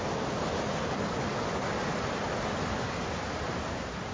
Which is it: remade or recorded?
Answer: recorded